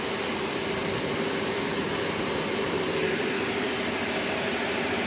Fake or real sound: fake